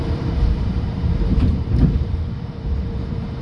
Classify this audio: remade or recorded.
remade